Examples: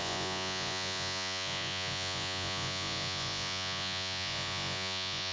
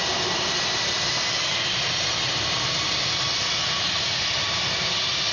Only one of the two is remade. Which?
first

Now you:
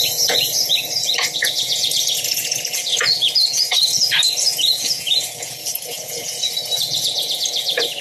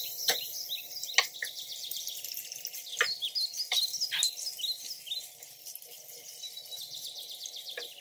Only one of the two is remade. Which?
first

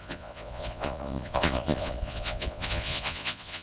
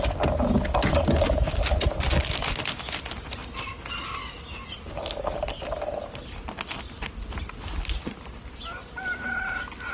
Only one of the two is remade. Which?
first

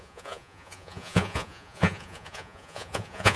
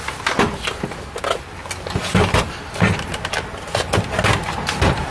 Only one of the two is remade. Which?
first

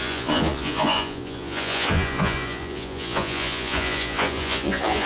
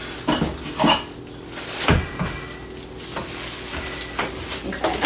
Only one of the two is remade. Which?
first